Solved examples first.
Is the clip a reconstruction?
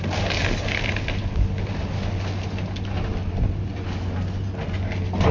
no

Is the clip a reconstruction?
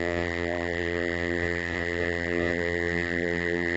yes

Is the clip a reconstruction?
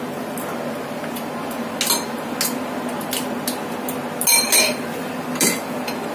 no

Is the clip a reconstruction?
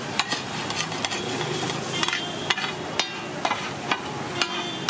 no